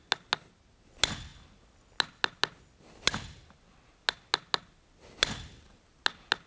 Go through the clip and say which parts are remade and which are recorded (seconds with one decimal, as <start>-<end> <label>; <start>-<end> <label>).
0.0-6.5 recorded